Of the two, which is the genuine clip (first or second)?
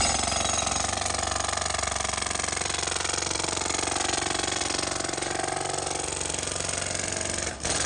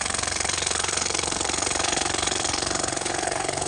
first